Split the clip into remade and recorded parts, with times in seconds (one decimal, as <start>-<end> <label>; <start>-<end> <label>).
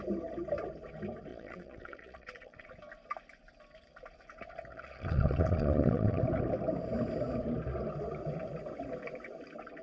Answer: 0.0-1.3 recorded; 1.3-2.7 remade; 2.7-4.7 recorded; 4.7-6.2 remade; 6.2-9.8 recorded